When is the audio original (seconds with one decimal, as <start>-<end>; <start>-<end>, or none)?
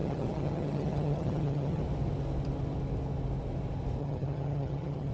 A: 1.8-4.0